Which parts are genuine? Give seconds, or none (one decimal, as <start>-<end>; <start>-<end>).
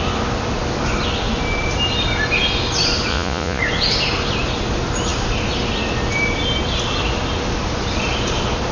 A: 0.0-3.1; 3.6-8.7